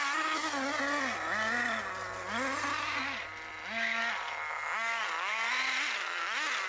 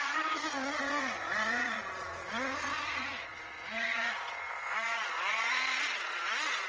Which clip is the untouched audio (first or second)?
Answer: first